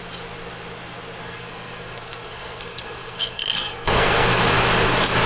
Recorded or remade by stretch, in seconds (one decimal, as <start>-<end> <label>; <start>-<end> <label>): 0.0-1.2 recorded; 1.2-4.4 remade; 4.4-5.3 recorded